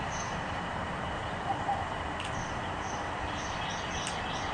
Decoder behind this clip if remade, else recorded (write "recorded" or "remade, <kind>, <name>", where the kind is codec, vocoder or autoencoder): recorded